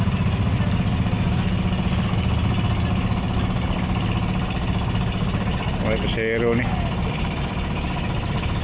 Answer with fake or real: real